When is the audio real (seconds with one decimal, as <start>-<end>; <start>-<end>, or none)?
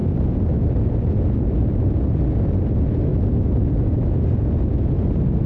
0.0-5.5